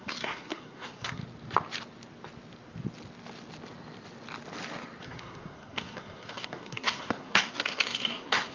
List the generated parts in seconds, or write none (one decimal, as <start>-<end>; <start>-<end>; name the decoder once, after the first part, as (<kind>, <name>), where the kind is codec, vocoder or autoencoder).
0.0-1.2 (codec, SNAC); 5.0-8.5